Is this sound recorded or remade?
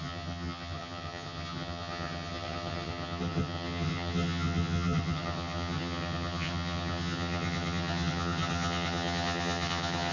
remade